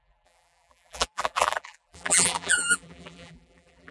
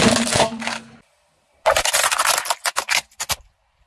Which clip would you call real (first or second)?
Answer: second